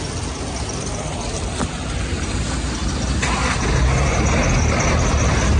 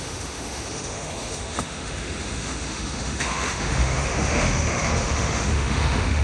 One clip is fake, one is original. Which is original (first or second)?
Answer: first